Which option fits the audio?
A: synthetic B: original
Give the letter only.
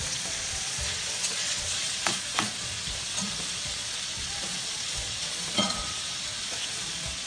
A